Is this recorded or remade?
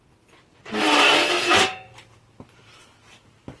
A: recorded